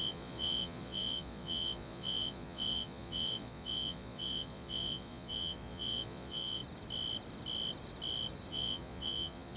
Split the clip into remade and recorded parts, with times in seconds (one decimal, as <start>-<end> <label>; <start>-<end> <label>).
0.0-6.6 remade; 6.6-8.5 recorded; 8.5-9.6 remade